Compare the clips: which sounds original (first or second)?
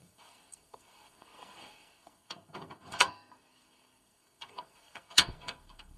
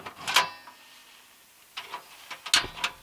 second